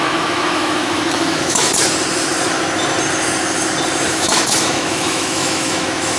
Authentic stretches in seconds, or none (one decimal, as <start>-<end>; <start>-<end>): 1.7-4.1